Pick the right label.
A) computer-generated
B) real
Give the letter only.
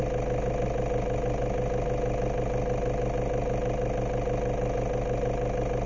B